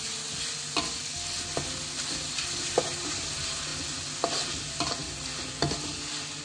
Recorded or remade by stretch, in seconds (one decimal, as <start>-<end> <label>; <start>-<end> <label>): 0.0-6.4 recorded